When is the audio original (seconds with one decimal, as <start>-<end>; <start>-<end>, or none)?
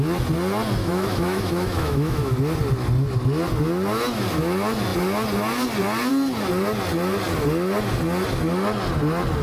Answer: 0.0-0.8; 2.4-9.4